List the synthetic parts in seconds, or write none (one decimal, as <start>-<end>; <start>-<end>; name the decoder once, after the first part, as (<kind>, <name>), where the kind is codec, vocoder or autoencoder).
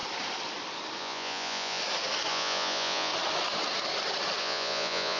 1.0-1.8 (vocoder, Vocos); 2.3-3.1; 4.4-5.2